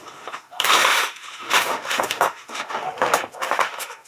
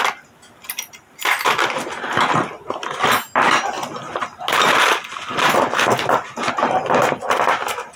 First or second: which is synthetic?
first